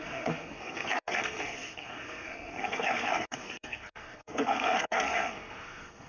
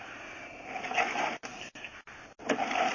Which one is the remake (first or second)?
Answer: first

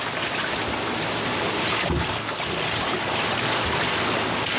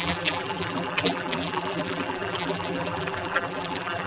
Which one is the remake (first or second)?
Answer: second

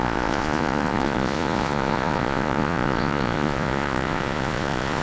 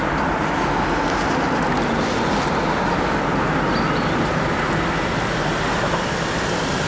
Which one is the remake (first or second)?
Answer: first